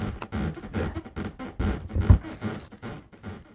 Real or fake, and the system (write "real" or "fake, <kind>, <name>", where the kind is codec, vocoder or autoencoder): real